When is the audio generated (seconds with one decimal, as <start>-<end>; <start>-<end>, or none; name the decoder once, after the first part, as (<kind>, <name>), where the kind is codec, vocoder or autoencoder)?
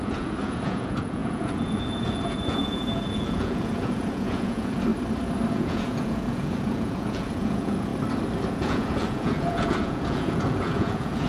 0.0-4.9 (vocoder, Vocos); 5.5-7.9; 8.5-11.3